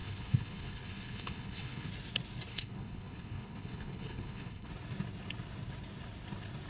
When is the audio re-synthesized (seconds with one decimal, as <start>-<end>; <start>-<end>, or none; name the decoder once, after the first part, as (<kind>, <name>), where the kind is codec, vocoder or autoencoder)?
0.0-1.9 (codec, HILCodec); 2.5-4.7

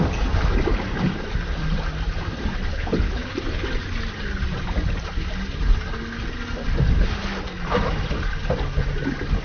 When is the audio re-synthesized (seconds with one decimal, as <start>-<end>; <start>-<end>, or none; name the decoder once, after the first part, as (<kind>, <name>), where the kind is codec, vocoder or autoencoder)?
2.7-3.3 (codec, HILCodec)

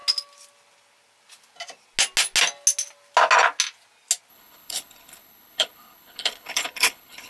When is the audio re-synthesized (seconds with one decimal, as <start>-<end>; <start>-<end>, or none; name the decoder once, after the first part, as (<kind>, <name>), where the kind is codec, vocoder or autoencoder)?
4.3-7.3 (codec, HILCodec)

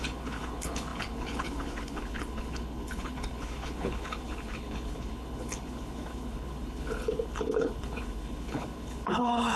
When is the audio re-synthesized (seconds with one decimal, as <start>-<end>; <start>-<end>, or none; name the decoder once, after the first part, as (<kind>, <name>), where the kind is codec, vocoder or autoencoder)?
0.0-9.6 (codec, HILCodec)

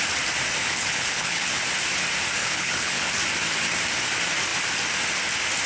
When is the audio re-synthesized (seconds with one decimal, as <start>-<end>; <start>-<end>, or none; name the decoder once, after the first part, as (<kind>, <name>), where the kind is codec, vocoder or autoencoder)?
0.6-1.6 (codec, HILCodec); 2.4-3.1